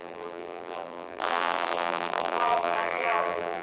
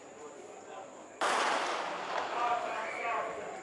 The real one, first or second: second